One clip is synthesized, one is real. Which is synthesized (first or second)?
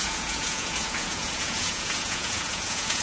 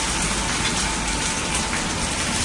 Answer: first